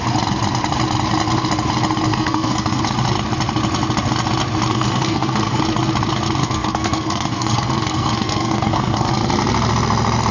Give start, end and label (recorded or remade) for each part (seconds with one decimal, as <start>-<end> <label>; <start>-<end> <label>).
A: 0.0-2.1 recorded; 2.1-2.8 remade; 2.8-4.7 recorded; 4.7-5.6 remade; 5.6-6.4 recorded; 6.4-9.1 remade; 9.1-10.3 recorded